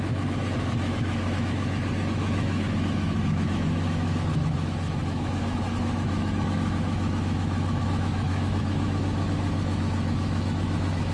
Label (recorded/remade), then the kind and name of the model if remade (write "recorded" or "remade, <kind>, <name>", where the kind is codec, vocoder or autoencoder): remade, autoencoder, DAC-VAE